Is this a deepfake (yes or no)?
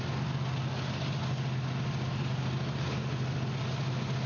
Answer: no